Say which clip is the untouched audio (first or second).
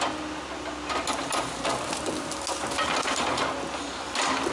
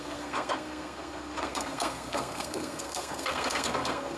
first